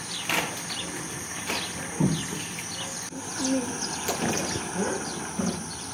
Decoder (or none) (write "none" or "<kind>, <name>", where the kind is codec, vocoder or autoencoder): none